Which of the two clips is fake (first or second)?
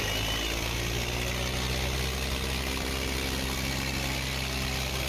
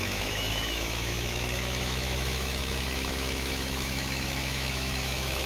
second